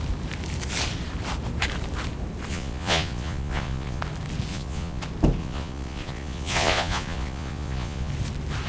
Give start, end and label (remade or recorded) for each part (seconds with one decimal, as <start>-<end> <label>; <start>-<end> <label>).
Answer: 0.0-2.5 recorded; 2.5-4.0 remade; 4.0-4.5 recorded; 4.5-5.0 remade; 5.0-5.4 recorded; 5.4-8.1 remade; 8.1-8.7 recorded